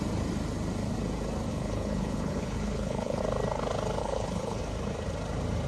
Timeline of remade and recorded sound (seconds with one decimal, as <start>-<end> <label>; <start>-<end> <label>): 0.0-1.5 recorded; 1.5-3.2 remade; 3.2-4.0 recorded; 4.0-4.6 remade; 4.6-5.7 recorded